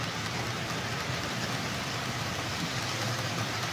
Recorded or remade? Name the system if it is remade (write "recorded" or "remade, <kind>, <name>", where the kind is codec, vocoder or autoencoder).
recorded